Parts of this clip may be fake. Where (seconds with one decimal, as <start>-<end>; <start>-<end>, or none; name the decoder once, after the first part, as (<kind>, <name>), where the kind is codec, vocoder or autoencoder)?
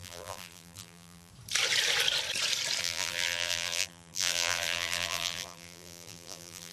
0.0-1.3 (vocoder, BigVGAN v2); 2.8-6.7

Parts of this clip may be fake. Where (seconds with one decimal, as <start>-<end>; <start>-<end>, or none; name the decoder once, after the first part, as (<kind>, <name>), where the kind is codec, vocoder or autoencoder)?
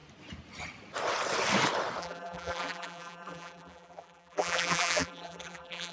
2.0-5.9 (vocoder, BigVGAN v2)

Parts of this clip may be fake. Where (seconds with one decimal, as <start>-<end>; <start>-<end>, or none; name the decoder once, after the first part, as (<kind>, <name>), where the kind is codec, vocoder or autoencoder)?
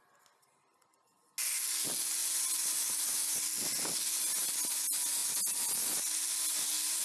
2.2-2.8 (vocoder, BigVGAN v2)